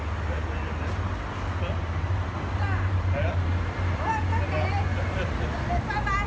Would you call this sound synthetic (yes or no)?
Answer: no